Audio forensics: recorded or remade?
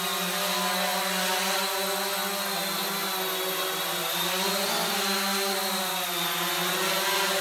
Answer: recorded